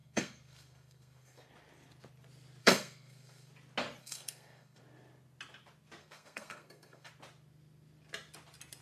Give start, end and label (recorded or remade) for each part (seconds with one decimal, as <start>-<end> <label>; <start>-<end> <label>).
0.0-1.5 remade; 1.5-2.6 recorded; 2.6-3.5 remade; 3.5-4.0 recorded; 4.0-4.8 remade; 4.8-6.0 recorded; 6.0-7.1 remade; 7.1-8.8 recorded